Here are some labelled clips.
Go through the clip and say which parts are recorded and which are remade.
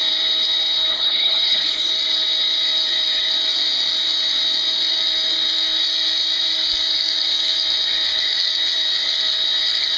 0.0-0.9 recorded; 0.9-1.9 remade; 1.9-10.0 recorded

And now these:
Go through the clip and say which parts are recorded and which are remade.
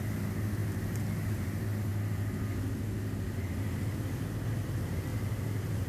0.0-5.9 recorded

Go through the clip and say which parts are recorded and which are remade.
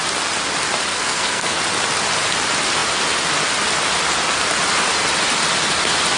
0.0-0.9 recorded; 0.9-1.6 remade; 1.6-6.2 recorded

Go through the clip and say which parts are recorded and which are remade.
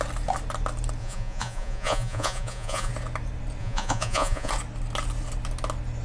0.0-1.0 recorded; 1.0-2.9 remade; 2.9-3.6 recorded; 3.6-4.5 remade; 4.5-6.0 recorded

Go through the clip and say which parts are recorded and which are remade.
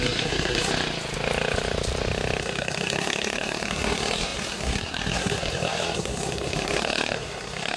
0.0-0.7 remade; 0.7-2.4 recorded; 2.4-7.8 remade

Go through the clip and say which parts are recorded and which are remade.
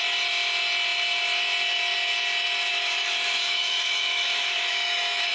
0.0-2.7 recorded; 2.7-5.3 remade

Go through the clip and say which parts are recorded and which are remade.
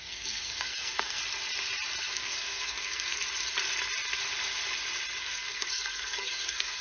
0.0-1.2 remade; 1.2-2.0 recorded; 2.0-3.2 remade; 3.2-5.2 recorded; 5.2-6.8 remade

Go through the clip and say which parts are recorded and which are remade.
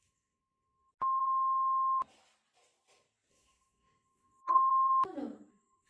0.0-0.9 remade; 0.9-3.3 recorded; 3.3-4.6 remade; 4.6-5.5 recorded; 5.5-5.9 remade